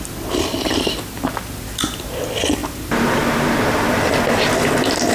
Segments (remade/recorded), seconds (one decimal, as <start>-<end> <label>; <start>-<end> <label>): 0.0-5.1 recorded